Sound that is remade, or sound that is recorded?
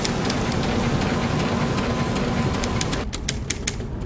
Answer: recorded